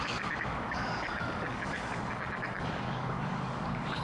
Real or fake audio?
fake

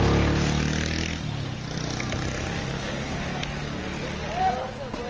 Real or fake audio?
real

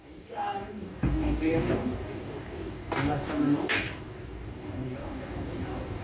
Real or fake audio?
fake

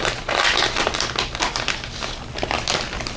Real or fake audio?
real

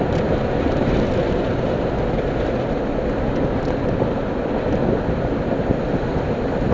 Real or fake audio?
real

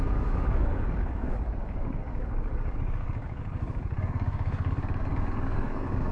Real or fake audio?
fake